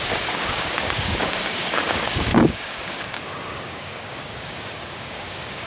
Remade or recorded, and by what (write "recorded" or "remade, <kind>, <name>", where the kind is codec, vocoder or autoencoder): remade, codec, DAC